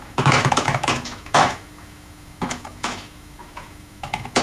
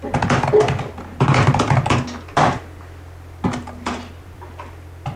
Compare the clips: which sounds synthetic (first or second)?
first